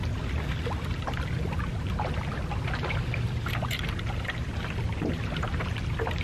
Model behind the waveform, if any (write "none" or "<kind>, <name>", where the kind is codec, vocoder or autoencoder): none